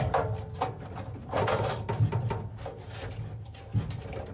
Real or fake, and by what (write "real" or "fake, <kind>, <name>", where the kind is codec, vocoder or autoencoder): real